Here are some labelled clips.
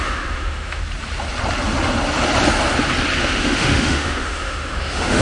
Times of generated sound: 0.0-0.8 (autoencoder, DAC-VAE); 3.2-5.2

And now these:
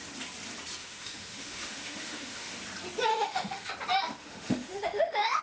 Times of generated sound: 0.8-2.6 (autoencoder, DAC-VAE); 3.1-3.7; 4.2-5.4

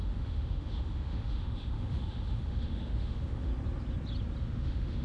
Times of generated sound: 0.0-3.5 (autoencoder, DAC-VAE); 4.4-5.0

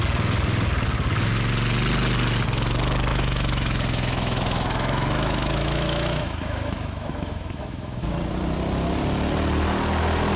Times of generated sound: 3.1-8.1 (autoencoder, DAC-VAE)

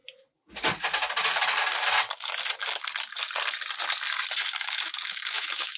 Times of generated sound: 4.4-5.8 (autoencoder, DAC-VAE)

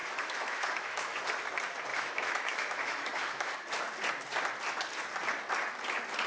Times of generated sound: 0.0-1.2 (autoencoder, DAC-VAE); 1.9-3.5

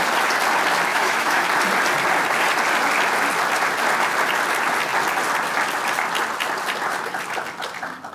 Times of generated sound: 0.9-1.4 (autoencoder, DAC-VAE)